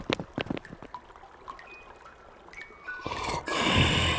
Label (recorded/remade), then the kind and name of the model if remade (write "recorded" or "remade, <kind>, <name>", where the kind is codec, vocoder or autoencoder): recorded